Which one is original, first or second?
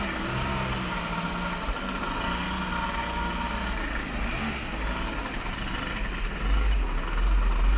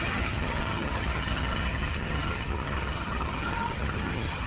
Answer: first